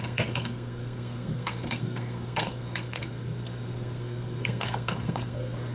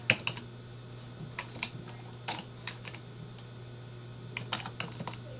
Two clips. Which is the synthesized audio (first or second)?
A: first